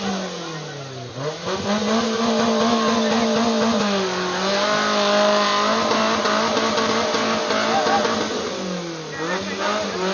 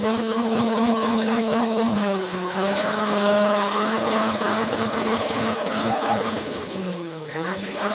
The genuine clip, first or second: first